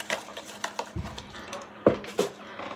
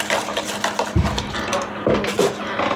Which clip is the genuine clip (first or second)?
second